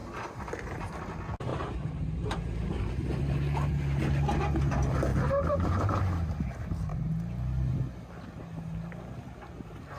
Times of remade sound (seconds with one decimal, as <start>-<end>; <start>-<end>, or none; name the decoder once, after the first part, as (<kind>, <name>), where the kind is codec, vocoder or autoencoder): 0.0-1.1 (vocoder, BigVGAN v2); 1.5-2.9; 5.1-6.0